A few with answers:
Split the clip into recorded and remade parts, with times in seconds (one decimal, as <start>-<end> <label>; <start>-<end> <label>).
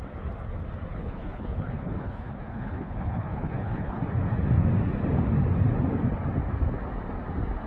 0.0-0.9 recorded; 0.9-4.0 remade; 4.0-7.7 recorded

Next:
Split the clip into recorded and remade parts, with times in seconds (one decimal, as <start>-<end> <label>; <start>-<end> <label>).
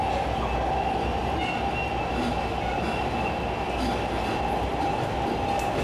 0.0-5.8 recorded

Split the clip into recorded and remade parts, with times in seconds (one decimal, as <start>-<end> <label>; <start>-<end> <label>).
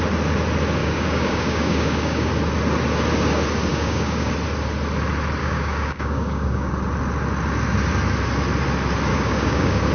0.0-0.8 recorded; 0.8-2.3 remade; 2.3-3.7 recorded; 3.7-4.3 remade; 4.3-5.4 recorded; 5.4-6.7 remade; 6.7-9.1 recorded; 9.1-9.9 remade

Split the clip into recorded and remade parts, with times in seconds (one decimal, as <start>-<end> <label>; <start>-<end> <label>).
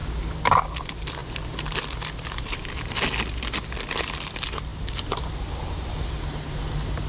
0.0-1.2 recorded; 1.2-2.9 remade; 2.9-4.7 recorded; 4.7-5.2 remade; 5.2-7.1 recorded